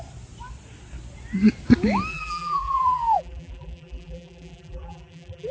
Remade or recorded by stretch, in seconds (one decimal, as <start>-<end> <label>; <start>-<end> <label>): 0.0-2.1 recorded; 2.1-5.5 remade